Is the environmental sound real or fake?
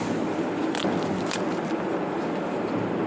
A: real